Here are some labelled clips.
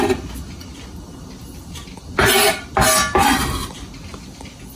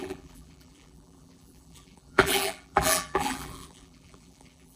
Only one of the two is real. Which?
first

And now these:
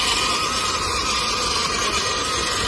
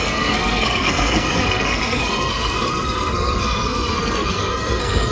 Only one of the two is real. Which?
first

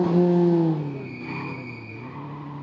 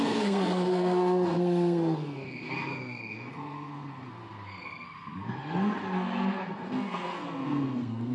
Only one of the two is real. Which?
first